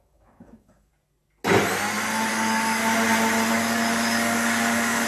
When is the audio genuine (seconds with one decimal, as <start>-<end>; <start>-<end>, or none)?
0.9-2.3; 2.8-3.5